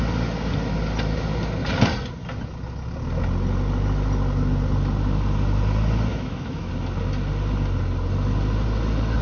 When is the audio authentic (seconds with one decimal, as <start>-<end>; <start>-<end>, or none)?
0.0-6.1; 6.7-9.2